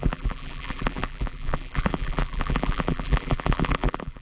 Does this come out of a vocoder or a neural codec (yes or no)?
yes